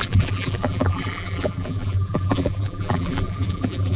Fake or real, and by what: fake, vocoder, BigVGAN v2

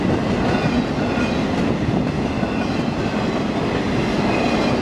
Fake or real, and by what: real